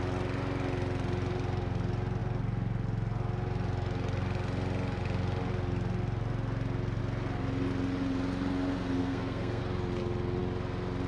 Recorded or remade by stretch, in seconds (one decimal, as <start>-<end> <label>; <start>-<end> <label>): 0.0-9.0 recorded; 9.0-9.6 remade; 9.6-11.1 recorded